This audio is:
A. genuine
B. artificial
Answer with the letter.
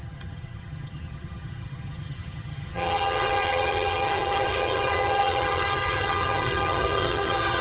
B